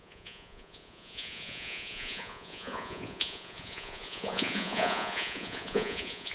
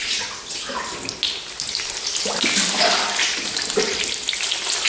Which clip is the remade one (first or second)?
first